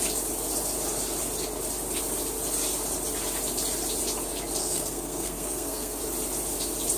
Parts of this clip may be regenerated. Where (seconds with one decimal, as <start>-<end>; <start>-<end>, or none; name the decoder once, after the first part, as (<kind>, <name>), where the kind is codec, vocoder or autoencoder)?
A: 4.6-6.0 (codec, SNAC)